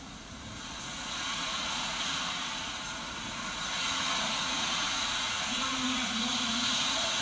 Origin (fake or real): fake